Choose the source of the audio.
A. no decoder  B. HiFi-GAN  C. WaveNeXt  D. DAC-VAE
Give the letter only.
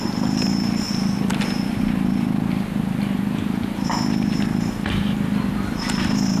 A